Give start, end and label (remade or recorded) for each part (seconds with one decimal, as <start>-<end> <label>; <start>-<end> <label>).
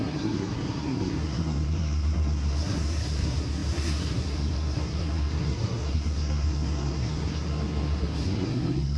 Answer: 0.0-9.0 remade